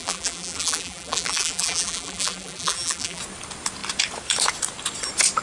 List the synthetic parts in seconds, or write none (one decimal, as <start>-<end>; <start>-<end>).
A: 0.0-3.2